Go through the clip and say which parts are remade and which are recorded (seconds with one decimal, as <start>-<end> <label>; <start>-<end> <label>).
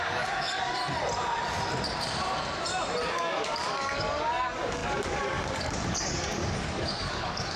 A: 0.0-0.8 remade; 0.8-3.1 recorded; 3.1-7.6 remade